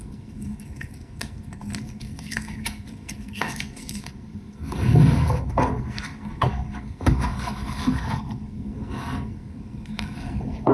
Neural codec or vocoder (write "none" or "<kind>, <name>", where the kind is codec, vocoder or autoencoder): codec, SNAC